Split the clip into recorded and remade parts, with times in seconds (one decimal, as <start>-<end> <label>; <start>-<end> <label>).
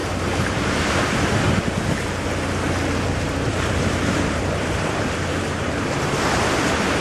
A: 0.0-0.9 remade; 0.9-3.5 recorded; 3.5-6.4 remade; 6.4-7.0 recorded